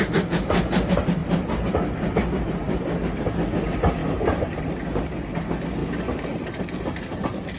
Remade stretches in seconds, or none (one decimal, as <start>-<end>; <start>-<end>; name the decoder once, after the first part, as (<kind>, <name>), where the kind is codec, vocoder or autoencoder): none